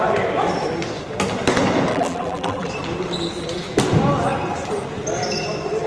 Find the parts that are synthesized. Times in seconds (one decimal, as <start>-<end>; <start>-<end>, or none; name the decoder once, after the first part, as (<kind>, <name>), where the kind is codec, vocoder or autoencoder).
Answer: 1.9-2.7 (vocoder, BigVGAN v2)